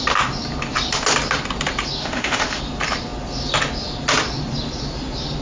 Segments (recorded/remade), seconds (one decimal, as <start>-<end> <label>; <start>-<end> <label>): 0.0-2.0 recorded; 2.0-2.6 remade; 2.6-5.4 recorded